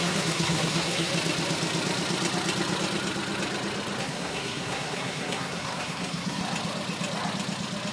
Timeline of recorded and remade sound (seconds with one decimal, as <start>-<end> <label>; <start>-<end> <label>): 0.0-1.1 remade; 1.1-4.0 recorded; 4.0-6.4 remade; 6.4-7.9 recorded